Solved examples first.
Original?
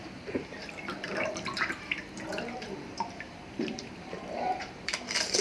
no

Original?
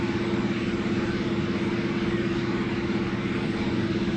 no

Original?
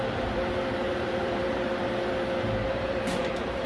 no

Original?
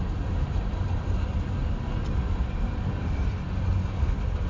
yes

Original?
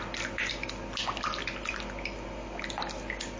yes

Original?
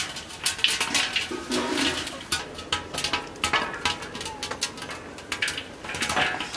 yes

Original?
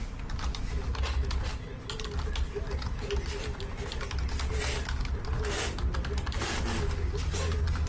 yes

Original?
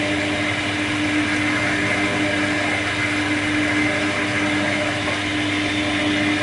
yes